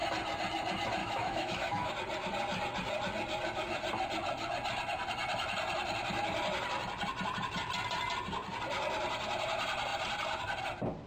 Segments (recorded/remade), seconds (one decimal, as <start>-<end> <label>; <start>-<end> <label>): 0.0-1.0 recorded; 1.0-1.9 remade; 1.9-11.1 recorded

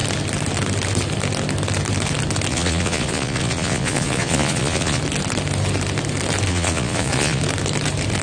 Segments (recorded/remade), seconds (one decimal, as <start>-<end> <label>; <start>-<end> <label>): 0.0-2.5 recorded; 2.5-5.0 remade; 5.0-6.5 recorded; 6.5-7.4 remade; 7.4-8.2 recorded

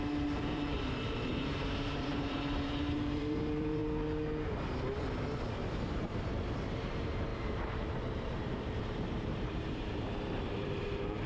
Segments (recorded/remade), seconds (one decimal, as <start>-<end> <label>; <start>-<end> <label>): 0.0-3.8 remade; 3.8-5.5 recorded; 5.5-11.3 remade

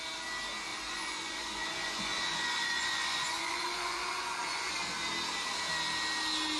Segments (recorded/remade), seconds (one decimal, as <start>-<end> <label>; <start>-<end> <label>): 0.0-0.7 recorded; 0.7-4.7 remade; 4.7-6.6 recorded

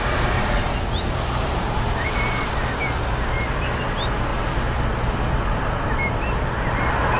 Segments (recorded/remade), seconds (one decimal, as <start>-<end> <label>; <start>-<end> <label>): 0.0-0.6 remade; 0.6-1.4 recorded; 1.4-4.3 remade; 4.3-5.3 recorded; 5.3-7.2 remade

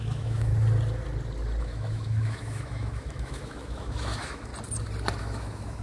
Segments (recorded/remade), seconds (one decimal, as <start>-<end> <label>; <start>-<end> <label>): 0.0-0.5 remade; 0.5-1.6 recorded; 1.6-4.5 remade; 4.5-5.2 recorded; 5.2-5.8 remade

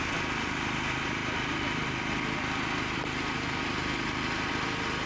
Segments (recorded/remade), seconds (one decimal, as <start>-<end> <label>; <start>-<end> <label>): 0.0-5.1 recorded

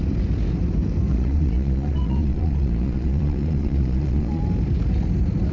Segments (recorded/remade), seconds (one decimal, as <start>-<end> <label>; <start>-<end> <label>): 0.0-1.1 recorded; 1.1-4.4 remade; 4.4-5.5 recorded